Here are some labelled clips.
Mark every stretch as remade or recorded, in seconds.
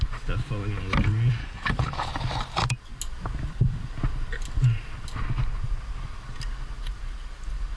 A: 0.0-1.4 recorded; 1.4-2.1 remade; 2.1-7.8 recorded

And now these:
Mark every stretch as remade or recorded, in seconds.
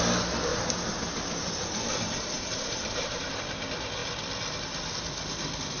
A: 0.0-0.5 recorded; 0.5-3.4 remade; 3.4-5.8 recorded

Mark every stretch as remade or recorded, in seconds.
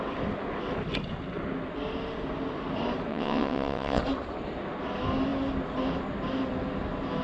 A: 0.0-3.1 recorded; 3.1-4.0 remade; 4.0-7.2 recorded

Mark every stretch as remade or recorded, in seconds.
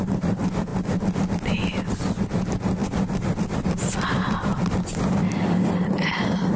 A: 0.0-6.6 recorded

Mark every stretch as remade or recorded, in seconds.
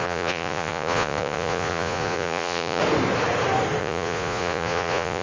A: 0.0-2.8 remade; 2.8-3.8 recorded; 3.8-5.2 remade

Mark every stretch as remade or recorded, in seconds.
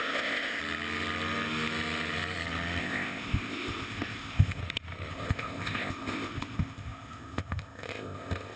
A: 0.0-0.6 remade; 0.6-2.8 recorded; 2.8-4.6 remade; 4.6-5.1 recorded; 5.1-8.6 remade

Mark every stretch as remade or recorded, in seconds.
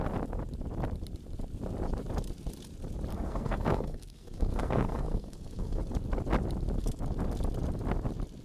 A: 0.0-3.1 recorded; 3.1-5.8 remade; 5.8-8.4 recorded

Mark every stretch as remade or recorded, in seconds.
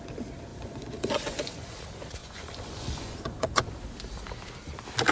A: 0.0-0.5 recorded; 0.5-1.8 remade; 1.8-2.2 recorded; 2.2-3.7 remade; 3.7-5.1 recorded